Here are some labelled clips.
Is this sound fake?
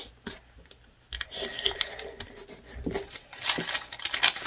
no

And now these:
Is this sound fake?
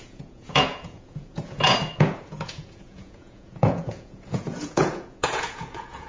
yes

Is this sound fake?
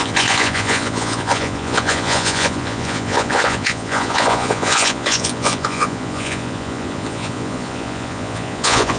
yes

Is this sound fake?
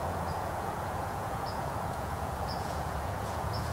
yes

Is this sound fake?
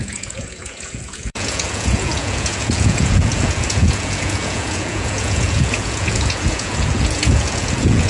yes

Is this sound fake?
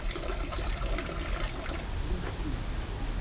no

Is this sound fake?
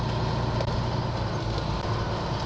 no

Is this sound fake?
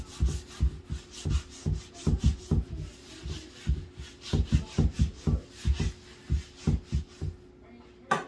no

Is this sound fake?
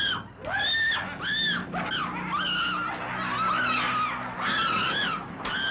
no